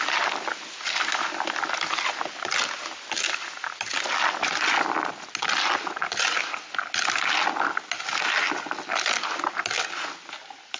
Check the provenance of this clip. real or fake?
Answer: real